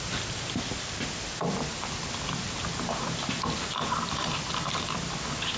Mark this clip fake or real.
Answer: real